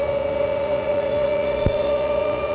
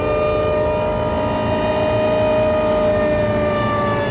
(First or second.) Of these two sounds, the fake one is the first